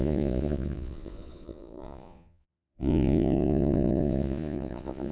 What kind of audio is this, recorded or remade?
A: remade